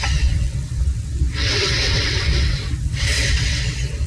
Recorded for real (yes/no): no